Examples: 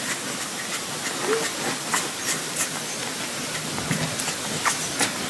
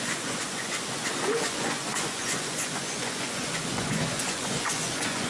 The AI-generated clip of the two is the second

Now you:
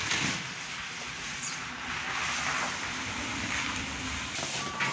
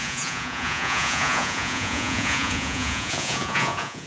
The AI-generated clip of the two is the second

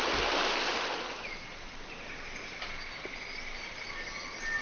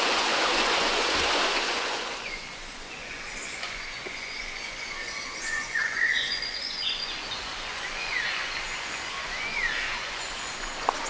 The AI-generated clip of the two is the second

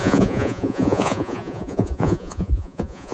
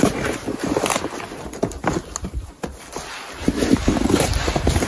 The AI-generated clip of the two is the first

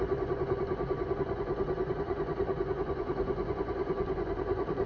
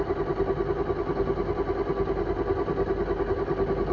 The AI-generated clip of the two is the first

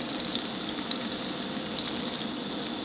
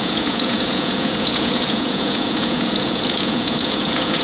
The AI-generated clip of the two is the second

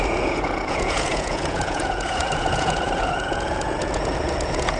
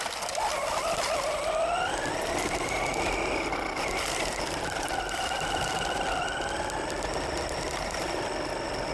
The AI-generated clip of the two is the first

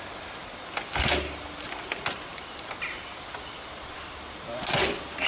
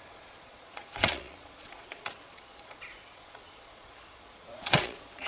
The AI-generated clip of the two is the second